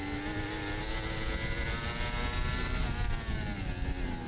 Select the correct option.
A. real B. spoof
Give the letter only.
A